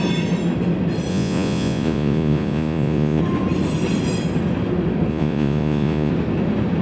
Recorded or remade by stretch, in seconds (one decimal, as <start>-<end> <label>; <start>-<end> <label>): 0.0-1.1 recorded; 1.1-3.2 remade; 3.2-5.1 recorded; 5.1-6.1 remade; 6.1-6.8 recorded